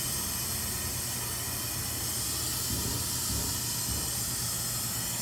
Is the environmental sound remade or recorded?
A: recorded